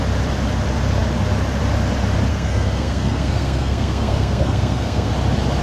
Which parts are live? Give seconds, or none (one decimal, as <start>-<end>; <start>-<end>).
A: 0.0-2.3; 5.1-5.6